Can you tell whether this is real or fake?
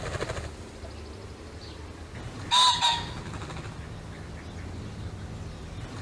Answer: real